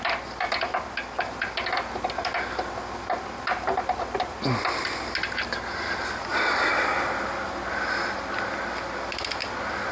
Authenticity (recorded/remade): recorded